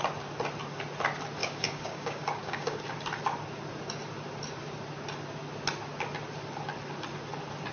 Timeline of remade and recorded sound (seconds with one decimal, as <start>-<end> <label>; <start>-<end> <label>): 0.0-1.4 recorded; 1.4-2.8 remade; 2.8-7.7 recorded